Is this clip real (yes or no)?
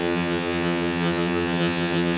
no